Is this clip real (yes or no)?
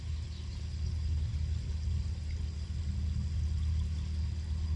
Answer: yes